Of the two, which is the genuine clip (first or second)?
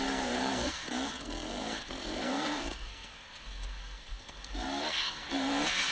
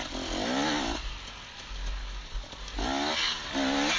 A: second